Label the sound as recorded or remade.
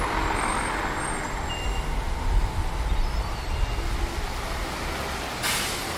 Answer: recorded